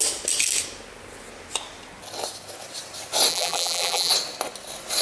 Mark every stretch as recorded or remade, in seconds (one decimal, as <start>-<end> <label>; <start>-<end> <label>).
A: 0.0-3.3 recorded; 3.3-4.1 remade; 4.1-5.0 recorded